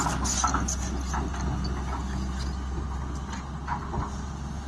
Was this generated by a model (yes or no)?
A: no